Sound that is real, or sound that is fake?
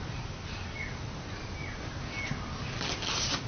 real